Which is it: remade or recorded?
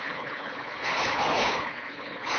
remade